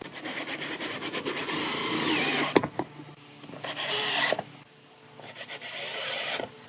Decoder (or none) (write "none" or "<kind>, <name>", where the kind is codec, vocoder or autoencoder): none